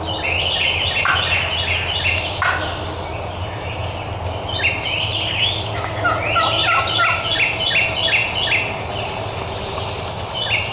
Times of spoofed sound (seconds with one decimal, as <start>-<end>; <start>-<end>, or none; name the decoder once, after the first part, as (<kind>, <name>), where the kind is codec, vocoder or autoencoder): none